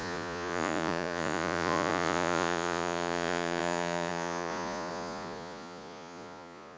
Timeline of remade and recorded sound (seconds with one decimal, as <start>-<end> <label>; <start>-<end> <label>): 0.0-6.8 remade